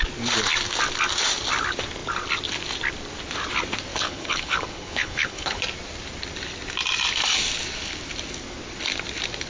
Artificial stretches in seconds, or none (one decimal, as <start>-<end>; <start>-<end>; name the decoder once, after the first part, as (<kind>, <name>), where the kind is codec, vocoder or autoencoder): 3.9-5.6 (codec, HILCodec)